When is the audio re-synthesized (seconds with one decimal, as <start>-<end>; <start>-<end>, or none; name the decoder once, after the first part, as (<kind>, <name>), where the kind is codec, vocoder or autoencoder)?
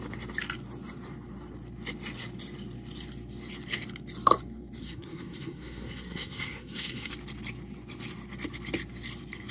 4.8-7.1 (codec, SNAC)